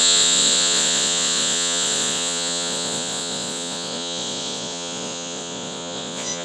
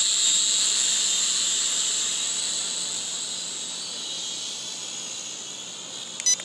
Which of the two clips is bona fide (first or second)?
second